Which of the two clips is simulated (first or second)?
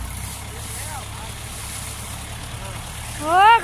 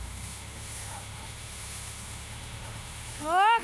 second